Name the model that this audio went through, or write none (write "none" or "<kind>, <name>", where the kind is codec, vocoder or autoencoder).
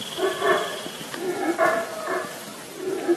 none